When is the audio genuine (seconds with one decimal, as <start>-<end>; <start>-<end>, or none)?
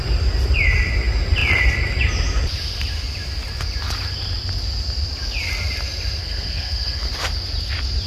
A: 0.0-6.2; 7.1-8.1